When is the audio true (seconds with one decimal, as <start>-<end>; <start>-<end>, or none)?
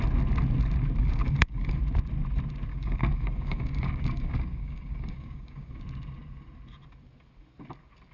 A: 0.0-1.0; 1.8-2.7; 5.8-8.1